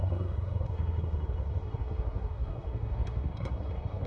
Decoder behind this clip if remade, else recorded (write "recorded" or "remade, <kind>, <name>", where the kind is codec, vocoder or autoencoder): remade, codec, SNAC